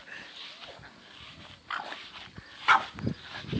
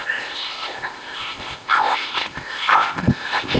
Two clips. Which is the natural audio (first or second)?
first